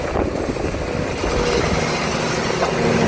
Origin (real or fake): real